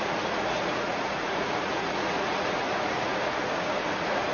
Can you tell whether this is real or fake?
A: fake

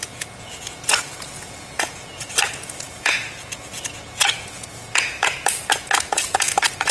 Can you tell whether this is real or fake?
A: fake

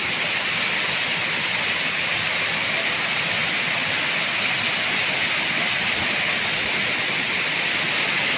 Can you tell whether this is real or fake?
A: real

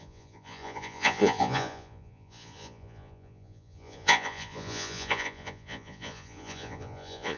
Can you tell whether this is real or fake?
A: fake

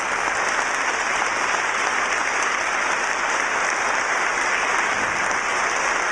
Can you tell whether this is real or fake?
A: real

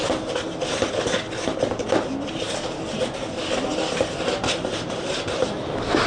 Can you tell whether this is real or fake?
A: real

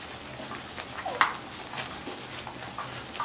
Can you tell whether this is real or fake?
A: real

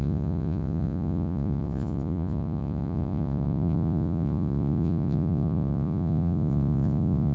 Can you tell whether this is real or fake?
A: fake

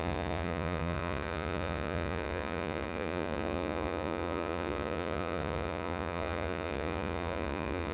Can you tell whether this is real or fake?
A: fake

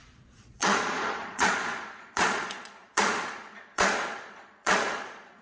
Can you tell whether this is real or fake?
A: fake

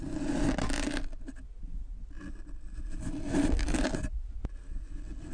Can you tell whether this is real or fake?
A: real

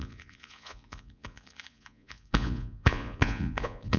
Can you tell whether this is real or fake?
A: fake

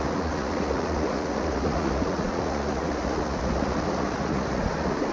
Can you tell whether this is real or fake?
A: fake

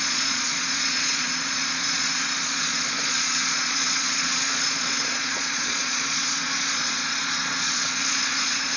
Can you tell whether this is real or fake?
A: fake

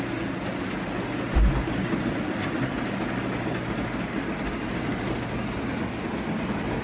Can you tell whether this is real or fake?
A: real